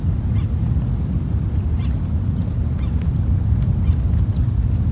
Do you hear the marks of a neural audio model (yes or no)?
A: no